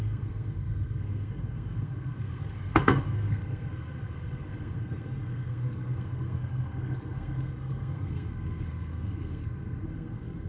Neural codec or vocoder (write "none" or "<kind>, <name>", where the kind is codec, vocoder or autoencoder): codec, SNAC